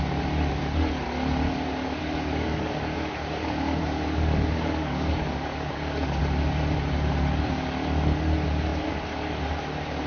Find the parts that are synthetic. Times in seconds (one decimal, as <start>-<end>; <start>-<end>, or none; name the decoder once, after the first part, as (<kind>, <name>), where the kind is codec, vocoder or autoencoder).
2.0-6.2 (codec, DAC)